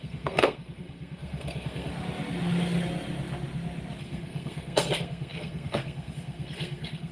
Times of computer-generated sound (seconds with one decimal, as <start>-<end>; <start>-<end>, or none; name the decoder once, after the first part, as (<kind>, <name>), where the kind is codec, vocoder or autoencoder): 0.0-1.9 (codec, SNAC); 4.0-7.1